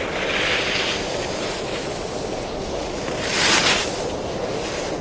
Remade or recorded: recorded